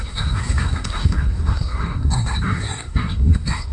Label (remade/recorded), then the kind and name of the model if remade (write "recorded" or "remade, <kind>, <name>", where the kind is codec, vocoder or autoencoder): remade, codec, SNAC